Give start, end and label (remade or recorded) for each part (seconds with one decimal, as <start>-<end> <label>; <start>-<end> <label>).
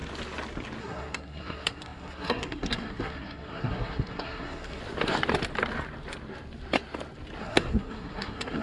0.0-0.8 recorded; 0.8-4.8 remade; 4.8-7.4 recorded; 7.4-8.6 remade